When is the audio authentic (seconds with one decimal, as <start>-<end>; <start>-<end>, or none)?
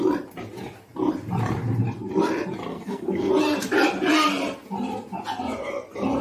0.0-2.7; 3.3-6.2